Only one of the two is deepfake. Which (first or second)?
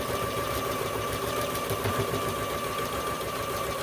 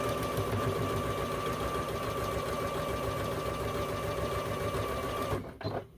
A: first